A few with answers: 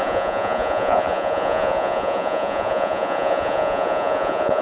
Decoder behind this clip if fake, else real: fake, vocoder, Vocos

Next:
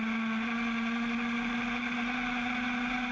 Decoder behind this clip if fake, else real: real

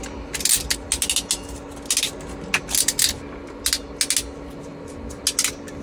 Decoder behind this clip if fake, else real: real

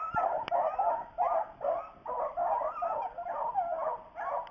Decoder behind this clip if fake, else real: real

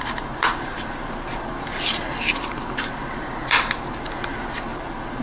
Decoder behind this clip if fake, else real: fake, vocoder, BigVGAN v2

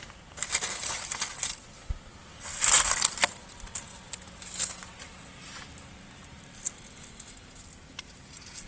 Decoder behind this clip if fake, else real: real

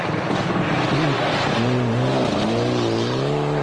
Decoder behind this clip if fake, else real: real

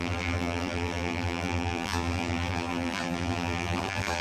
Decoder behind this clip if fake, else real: fake, vocoder, BigVGAN v2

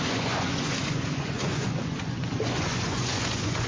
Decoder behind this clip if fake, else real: fake, vocoder, Vocos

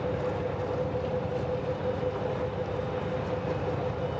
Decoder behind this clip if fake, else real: real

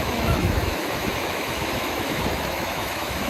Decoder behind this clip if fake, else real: fake, autoencoder, DAC-VAE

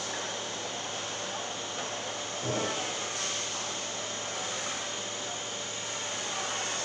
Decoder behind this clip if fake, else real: real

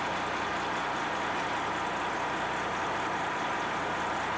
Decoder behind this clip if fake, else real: real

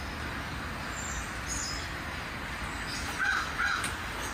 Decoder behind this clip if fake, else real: real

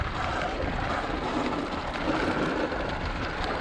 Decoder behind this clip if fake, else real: real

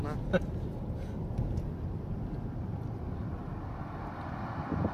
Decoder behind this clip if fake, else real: real